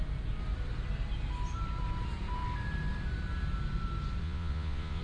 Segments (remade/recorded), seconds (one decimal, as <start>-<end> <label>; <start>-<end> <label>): 0.0-4.2 recorded; 4.2-5.0 remade